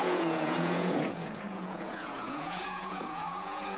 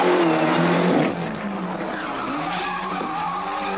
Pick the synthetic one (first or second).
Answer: first